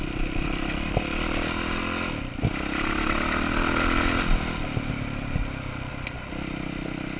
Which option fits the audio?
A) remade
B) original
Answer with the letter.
B